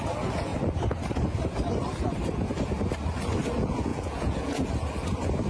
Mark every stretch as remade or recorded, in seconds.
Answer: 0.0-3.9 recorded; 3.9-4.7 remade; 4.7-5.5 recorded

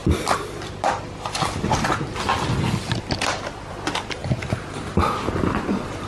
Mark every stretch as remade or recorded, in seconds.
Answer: 0.0-6.1 recorded

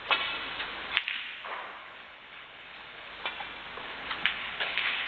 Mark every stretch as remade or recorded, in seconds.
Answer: 0.0-1.8 recorded; 1.8-3.1 remade; 3.1-3.8 recorded; 3.8-5.1 remade

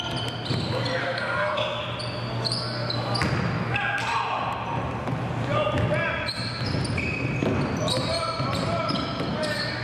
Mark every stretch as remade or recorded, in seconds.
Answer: 0.0-1.0 recorded; 1.0-1.8 remade; 1.8-9.8 recorded

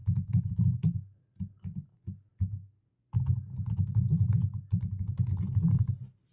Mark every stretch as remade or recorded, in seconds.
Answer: 0.0-0.6 remade; 0.6-6.3 recorded

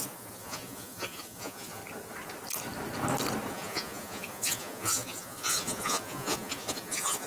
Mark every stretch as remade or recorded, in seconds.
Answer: 0.0-1.8 remade; 1.8-3.5 recorded; 3.5-7.3 remade

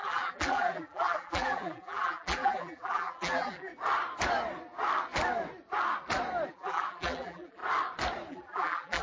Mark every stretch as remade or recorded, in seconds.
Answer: 0.0-3.7 remade; 3.7-6.5 recorded; 6.5-7.6 remade; 7.6-8.3 recorded; 8.3-9.0 remade